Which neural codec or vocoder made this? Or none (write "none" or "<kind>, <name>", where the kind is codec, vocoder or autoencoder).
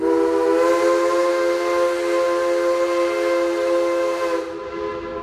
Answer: none